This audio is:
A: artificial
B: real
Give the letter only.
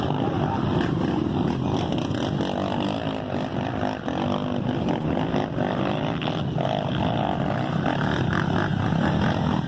B